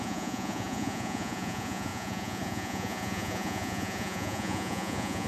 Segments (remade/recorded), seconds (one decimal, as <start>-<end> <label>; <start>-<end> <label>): 0.0-5.3 remade